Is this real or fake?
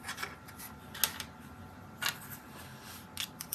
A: real